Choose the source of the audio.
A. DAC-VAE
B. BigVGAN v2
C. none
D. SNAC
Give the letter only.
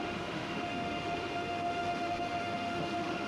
A